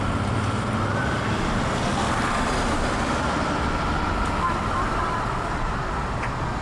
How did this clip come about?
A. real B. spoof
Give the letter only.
A